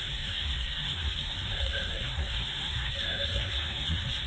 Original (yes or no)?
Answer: no